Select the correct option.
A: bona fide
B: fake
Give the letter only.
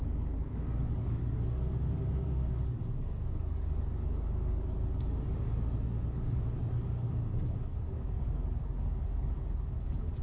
B